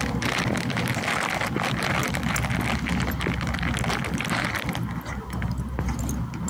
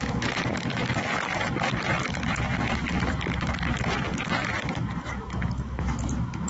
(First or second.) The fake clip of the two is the second